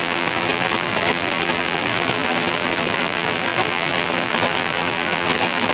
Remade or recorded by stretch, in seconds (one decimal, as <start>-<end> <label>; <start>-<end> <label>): 0.0-5.7 remade